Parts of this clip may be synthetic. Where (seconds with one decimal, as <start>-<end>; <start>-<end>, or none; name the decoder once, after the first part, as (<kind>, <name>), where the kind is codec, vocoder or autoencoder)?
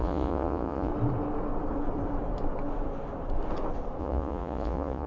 0.0-0.9 (vocoder, Vocos); 4.0-5.1